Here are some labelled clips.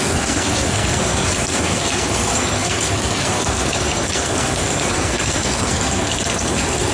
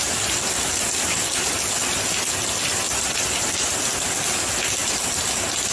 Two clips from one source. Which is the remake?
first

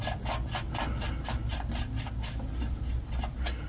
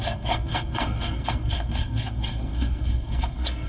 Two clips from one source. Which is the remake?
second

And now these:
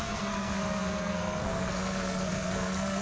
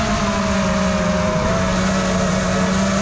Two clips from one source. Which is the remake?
first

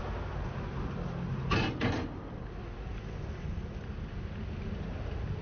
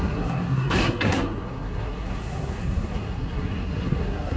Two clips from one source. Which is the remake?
second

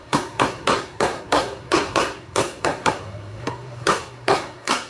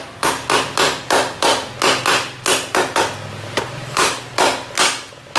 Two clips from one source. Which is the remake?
first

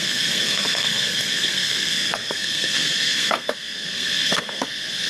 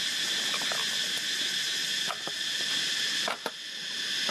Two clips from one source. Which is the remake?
first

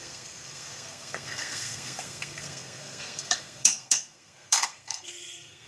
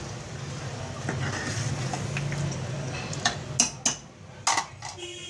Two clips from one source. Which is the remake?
first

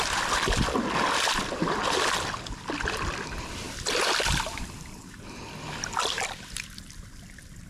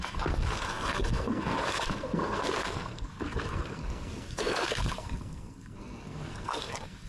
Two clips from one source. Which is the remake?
second